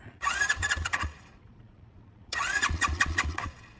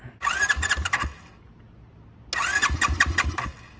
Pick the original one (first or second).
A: second